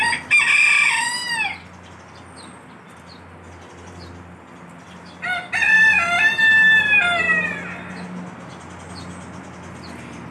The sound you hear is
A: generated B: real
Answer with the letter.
B